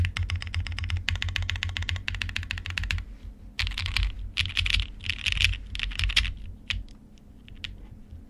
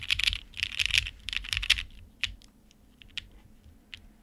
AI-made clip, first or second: second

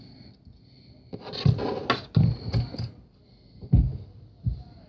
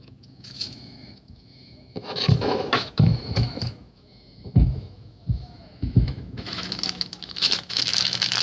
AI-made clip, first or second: second